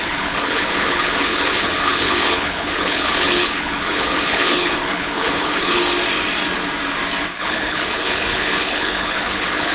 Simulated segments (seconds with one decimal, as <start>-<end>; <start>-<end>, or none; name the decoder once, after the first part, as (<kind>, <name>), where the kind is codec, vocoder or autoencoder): 0.0-5.8 (codec, HILCodec); 7.3-9.7